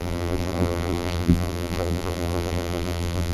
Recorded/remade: remade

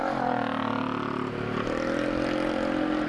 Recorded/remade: recorded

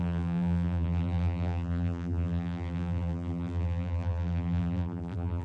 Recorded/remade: remade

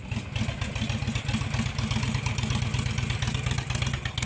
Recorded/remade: recorded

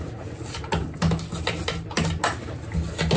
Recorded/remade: recorded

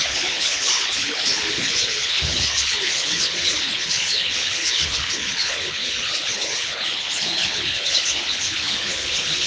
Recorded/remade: remade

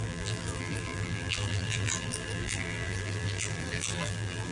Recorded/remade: remade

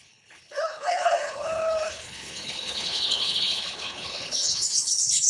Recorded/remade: remade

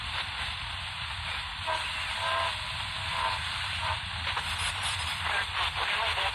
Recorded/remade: recorded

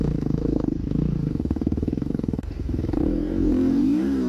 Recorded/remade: remade